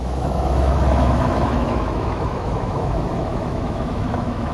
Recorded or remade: remade